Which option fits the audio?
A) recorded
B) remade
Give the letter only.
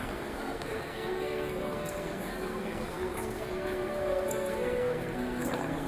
B